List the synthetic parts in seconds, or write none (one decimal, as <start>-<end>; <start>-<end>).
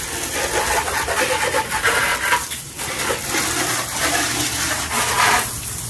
none